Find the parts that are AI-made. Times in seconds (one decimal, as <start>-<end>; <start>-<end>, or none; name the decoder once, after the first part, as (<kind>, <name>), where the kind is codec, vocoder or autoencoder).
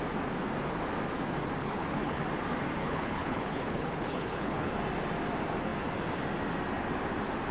1.6-2.2 (codec, HILCodec); 2.8-4.7